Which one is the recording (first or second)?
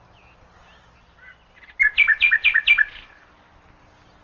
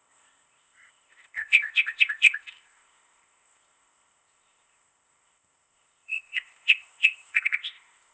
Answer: first